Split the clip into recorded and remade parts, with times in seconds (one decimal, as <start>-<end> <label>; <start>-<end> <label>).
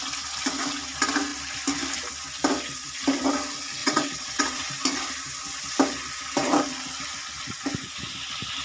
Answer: 0.0-3.8 recorded; 3.8-4.7 remade; 4.7-8.6 recorded